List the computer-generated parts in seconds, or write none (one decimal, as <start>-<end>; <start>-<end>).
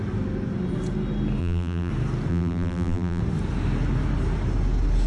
1.4-1.9; 2.3-3.2